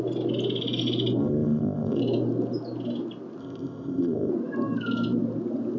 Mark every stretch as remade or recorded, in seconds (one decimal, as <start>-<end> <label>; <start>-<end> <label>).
0.0-1.2 recorded; 1.2-2.0 remade; 2.0-3.4 recorded; 3.4-4.3 remade; 4.3-5.8 recorded